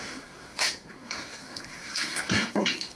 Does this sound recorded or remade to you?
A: remade